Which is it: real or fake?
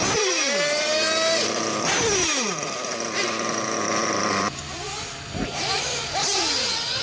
real